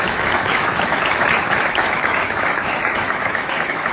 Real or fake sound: fake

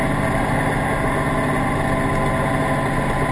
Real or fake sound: real